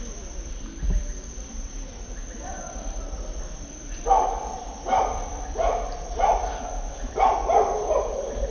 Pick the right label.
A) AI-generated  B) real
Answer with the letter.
A